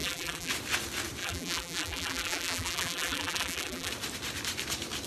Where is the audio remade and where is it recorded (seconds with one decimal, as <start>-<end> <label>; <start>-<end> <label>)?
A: 0.0-0.5 remade; 0.5-1.2 recorded; 1.2-3.9 remade; 3.9-5.1 recorded

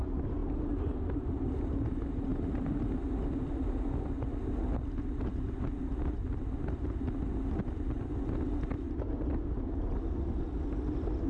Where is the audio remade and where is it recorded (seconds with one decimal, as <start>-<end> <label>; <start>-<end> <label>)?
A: 0.0-11.3 recorded